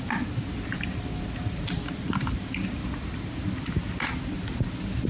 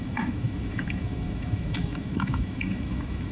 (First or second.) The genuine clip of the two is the first